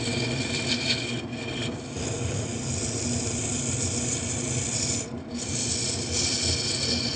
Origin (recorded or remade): recorded